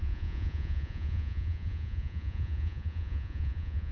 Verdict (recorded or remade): remade